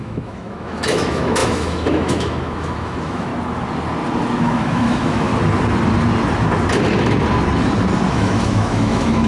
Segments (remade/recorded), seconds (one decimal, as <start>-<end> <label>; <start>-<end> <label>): 0.0-3.3 remade; 3.3-4.4 recorded; 4.4-5.3 remade; 5.3-8.1 recorded; 8.1-9.3 remade